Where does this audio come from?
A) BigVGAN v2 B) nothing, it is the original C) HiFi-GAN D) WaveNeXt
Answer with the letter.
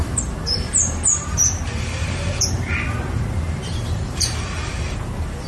A